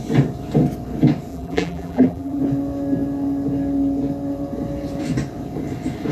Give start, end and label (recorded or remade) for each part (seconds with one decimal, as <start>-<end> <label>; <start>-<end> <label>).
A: 0.0-1.3 recorded; 1.3-2.4 remade; 2.4-6.1 recorded